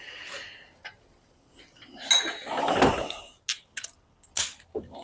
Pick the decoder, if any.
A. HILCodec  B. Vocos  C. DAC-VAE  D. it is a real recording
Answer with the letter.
D